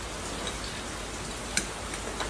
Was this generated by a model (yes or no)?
no